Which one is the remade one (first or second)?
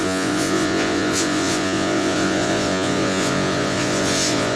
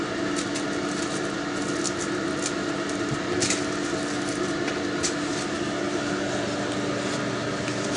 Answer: first